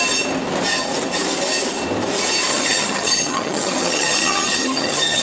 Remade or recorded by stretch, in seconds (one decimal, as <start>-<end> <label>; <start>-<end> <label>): 0.0-2.5 recorded; 2.5-5.2 remade